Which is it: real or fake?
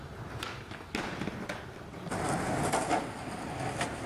real